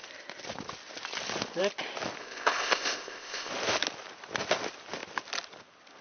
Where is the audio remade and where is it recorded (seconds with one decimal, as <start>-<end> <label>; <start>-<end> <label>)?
0.0-2.2 recorded; 2.2-3.5 remade; 3.5-6.0 recorded